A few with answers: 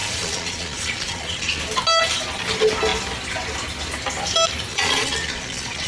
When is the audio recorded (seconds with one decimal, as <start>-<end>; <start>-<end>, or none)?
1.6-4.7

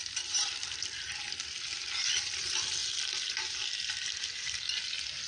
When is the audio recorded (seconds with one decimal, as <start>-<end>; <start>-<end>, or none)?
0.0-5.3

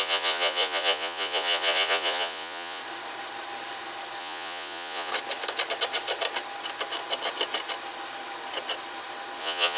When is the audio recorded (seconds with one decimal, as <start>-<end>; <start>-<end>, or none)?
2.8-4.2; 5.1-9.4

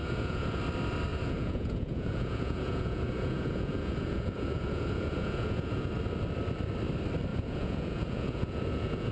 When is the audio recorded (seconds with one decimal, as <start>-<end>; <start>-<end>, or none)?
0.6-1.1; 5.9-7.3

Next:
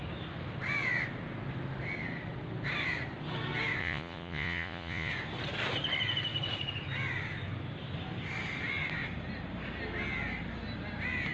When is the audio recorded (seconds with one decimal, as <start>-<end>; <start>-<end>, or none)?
0.0-3.8; 5.1-11.3